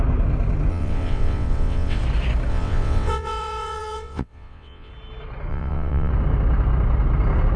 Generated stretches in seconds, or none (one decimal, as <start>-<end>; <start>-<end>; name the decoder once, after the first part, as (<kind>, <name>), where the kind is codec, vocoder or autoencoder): 0.7-2.0 (vocoder, WaveNeXt); 2.5-4.9; 5.5-6.1